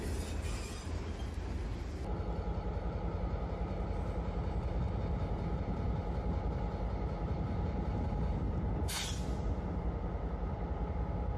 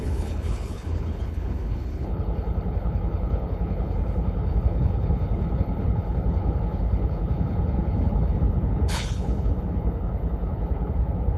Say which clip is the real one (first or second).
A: first